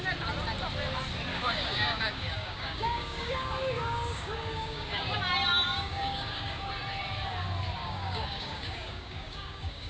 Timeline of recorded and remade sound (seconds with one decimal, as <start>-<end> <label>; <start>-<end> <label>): 0.0-1.3 recorded; 1.3-5.2 remade; 5.2-5.7 recorded; 5.7-6.7 remade; 6.7-7.8 recorded; 7.8-9.9 remade